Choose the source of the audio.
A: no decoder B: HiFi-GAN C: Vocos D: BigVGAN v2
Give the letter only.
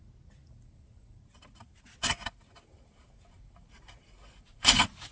A